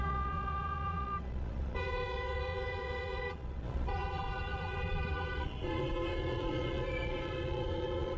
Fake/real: fake